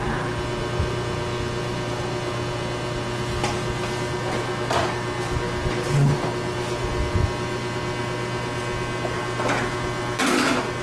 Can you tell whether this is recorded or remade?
recorded